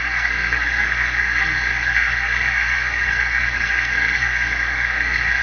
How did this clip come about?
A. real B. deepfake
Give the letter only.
B